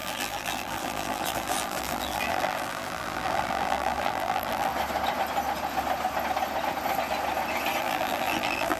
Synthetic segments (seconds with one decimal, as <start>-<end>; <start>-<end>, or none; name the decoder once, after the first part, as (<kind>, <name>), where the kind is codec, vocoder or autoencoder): 0.0-4.7 (vocoder, BigVGAN v2); 7.8-8.8